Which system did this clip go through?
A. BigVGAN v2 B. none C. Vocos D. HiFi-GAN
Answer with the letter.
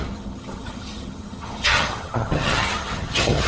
D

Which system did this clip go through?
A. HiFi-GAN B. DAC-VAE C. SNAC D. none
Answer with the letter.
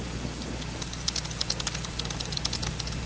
D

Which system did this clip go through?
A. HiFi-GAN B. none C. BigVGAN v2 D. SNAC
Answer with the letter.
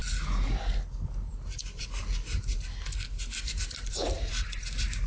B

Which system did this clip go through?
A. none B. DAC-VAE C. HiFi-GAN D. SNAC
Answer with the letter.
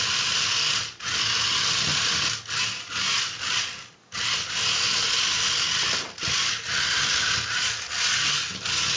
A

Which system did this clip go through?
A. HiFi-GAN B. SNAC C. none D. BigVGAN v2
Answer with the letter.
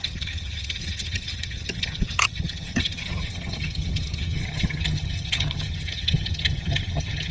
A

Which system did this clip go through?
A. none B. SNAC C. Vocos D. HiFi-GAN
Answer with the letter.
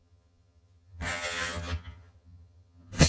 D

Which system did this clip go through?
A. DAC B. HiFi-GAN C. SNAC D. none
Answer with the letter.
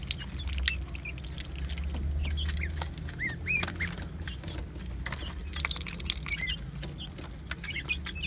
D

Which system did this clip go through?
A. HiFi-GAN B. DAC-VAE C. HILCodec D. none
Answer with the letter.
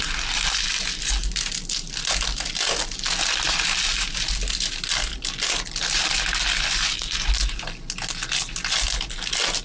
D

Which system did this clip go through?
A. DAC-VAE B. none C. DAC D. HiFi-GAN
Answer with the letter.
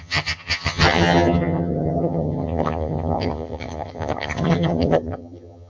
D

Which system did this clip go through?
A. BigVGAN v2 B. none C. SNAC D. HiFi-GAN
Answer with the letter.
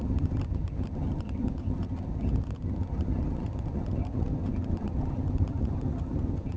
D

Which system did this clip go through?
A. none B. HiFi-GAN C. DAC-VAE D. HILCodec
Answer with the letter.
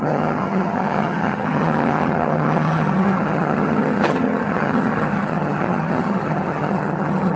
B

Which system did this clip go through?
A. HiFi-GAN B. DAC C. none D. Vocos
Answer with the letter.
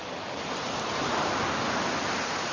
C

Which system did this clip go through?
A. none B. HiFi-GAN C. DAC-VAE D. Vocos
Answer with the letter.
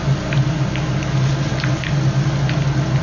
A